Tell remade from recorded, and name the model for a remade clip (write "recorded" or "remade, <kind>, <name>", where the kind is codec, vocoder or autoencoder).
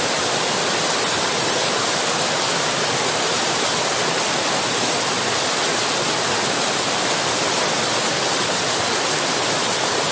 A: recorded